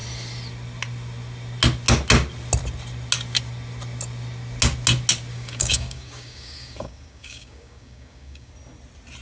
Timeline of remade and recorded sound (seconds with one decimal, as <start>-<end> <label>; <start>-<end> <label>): 0.0-5.3 recorded; 5.3-8.5 remade; 8.5-9.2 recorded